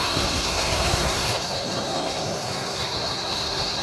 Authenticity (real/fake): fake